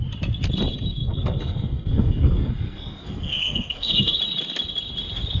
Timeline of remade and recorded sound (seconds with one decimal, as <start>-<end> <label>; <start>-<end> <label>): 0.0-1.0 recorded; 1.0-4.2 remade; 4.2-5.4 recorded

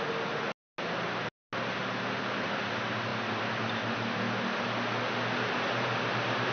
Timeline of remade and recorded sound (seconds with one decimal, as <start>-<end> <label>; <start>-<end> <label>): 0.0-6.5 recorded

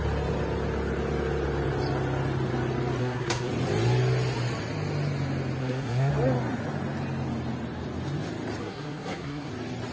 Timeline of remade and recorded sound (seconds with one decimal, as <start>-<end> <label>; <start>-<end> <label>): 0.0-3.0 recorded; 3.0-3.5 remade; 3.5-5.6 recorded; 5.6-6.1 remade; 6.1-8.6 recorded; 8.6-9.5 remade; 9.5-9.9 recorded

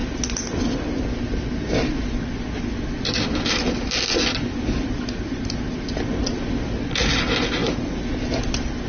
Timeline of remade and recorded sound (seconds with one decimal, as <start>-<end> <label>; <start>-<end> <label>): 0.0-8.9 recorded

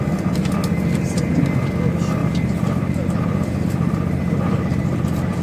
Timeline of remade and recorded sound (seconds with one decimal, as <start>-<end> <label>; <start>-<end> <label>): 0.0-2.2 recorded; 2.2-5.4 remade

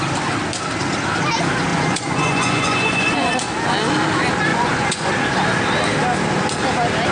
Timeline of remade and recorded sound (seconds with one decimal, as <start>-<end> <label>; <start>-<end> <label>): 0.0-1.7 recorded; 1.7-3.3 remade; 3.3-4.5 recorded; 4.5-5.1 remade; 5.1-7.1 recorded